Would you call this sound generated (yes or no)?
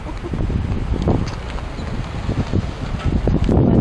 no